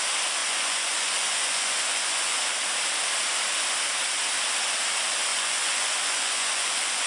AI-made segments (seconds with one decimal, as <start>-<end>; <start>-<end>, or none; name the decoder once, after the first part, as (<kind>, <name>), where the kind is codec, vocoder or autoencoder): 0.4-2.5 (vocoder, Vocos); 5.3-7.1